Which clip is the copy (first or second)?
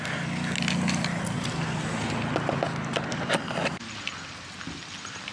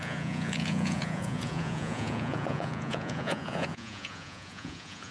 second